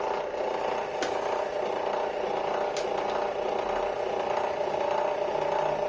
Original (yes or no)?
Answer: yes